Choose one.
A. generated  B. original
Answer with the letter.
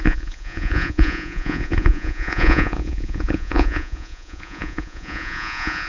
A